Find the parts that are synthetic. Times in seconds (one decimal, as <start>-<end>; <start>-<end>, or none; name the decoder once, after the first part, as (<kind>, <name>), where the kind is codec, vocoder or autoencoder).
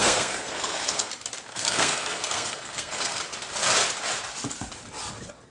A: 0.0-1.1 (codec, SNAC); 1.5-3.2